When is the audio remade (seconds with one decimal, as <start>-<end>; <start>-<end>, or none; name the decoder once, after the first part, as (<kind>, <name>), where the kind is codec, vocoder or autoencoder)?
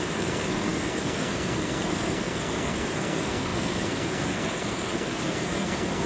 0.0-6.1 (codec, SNAC)